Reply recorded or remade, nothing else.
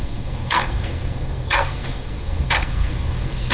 remade